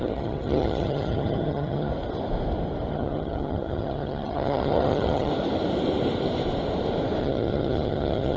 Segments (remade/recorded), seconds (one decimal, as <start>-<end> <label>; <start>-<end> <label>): 0.0-1.9 remade; 1.9-2.9 recorded; 2.9-5.3 remade; 5.3-7.2 recorded; 7.2-8.4 remade